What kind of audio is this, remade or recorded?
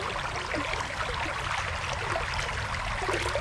recorded